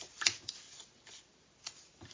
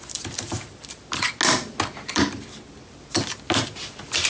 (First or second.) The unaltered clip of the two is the second